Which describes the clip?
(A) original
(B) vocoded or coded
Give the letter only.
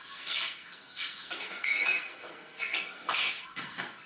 B